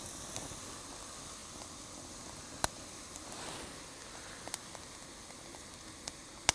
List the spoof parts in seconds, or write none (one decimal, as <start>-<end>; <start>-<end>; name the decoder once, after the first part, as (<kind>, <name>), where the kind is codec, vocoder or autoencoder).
none